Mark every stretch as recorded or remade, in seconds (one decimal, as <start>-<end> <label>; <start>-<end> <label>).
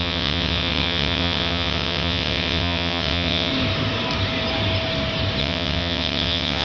0.0-3.5 remade; 3.5-5.4 recorded; 5.4-6.6 remade